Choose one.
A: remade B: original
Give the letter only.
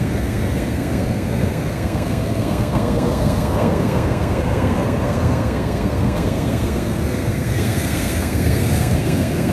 A